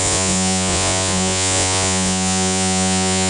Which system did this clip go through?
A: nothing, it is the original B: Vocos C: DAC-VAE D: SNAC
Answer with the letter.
B